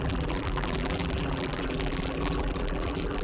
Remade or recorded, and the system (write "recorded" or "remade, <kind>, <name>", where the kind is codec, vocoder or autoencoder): remade, vocoder, BigVGAN v2